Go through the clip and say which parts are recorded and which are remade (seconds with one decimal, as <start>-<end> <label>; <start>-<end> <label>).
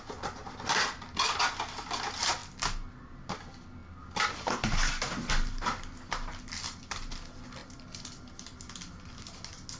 0.0-9.8 recorded